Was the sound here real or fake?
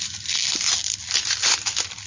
real